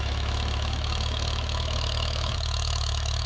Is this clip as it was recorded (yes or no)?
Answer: no